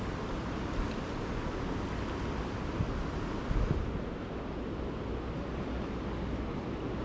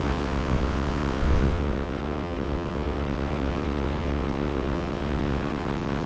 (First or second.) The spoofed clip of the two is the second